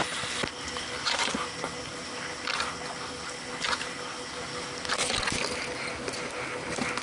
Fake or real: real